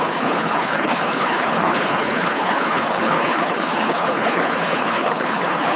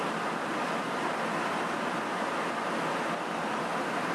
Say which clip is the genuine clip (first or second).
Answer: second